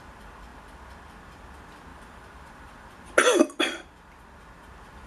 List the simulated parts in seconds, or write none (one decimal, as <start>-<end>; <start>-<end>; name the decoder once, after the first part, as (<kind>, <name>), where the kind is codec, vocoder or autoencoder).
1.9-3.0 (vocoder, BigVGAN v2)